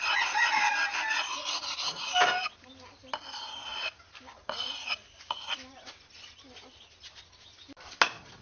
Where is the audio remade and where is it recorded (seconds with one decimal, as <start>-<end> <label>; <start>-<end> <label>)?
0.0-1.3 recorded; 1.3-2.1 remade; 2.1-4.4 recorded; 4.4-5.5 remade; 5.5-8.4 recorded